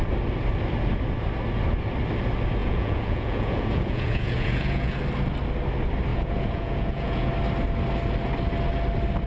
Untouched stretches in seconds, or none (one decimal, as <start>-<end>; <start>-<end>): 0.0-2.6; 5.0-6.1; 7.3-9.3